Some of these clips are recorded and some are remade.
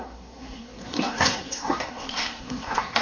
remade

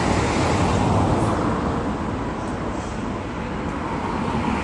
recorded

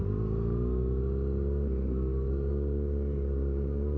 recorded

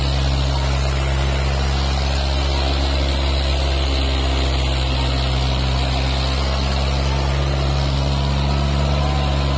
recorded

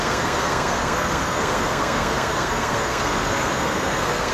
remade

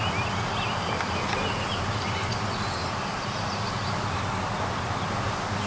recorded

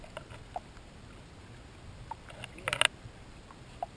recorded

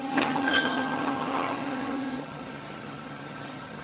remade